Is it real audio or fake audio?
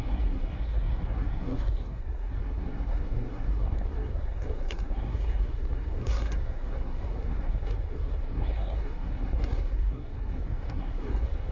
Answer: fake